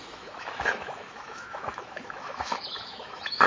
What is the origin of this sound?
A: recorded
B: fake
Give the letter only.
B